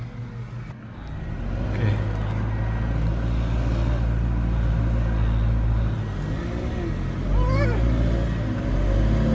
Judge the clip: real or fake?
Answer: real